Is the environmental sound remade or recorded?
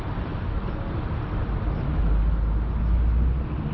recorded